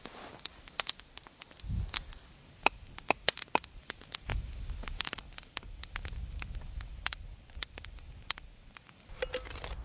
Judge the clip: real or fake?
real